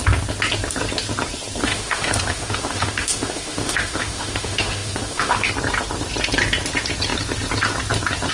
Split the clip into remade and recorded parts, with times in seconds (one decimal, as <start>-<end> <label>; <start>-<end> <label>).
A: 0.0-1.6 recorded; 1.6-5.5 remade; 5.5-8.3 recorded

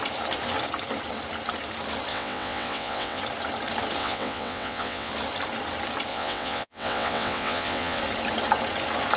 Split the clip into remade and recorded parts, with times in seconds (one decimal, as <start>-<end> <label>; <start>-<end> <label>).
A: 0.0-2.1 recorded; 2.1-3.2 remade; 3.2-4.0 recorded; 4.0-5.1 remade; 5.1-6.1 recorded; 6.1-8.0 remade; 8.0-9.2 recorded

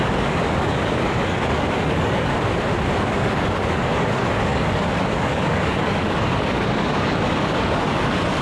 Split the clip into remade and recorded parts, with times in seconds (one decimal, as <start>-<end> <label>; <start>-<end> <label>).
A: 0.0-2.3 remade; 2.3-3.0 recorded; 3.0-8.4 remade